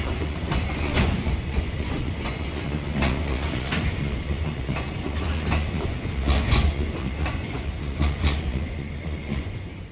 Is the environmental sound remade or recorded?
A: remade